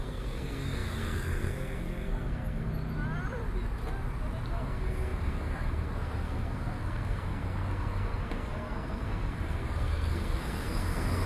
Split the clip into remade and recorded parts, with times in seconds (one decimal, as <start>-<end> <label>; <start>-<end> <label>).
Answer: 0.0-2.7 remade; 2.7-4.5 recorded; 4.5-11.3 remade